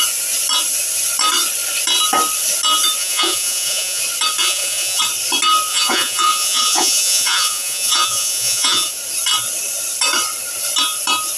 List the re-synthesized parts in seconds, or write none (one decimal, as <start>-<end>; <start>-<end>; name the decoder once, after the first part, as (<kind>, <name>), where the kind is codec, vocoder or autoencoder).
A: 3.0-4.0 (vocoder, Vocos); 4.4-5.0; 5.7-8.9